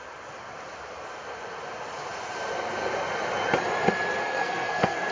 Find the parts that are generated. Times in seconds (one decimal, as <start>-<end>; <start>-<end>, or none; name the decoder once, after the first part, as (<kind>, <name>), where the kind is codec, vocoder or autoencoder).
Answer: 4.2-5.1 (codec, SNAC)